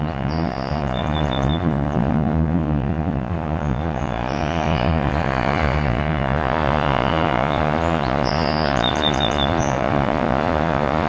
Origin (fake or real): fake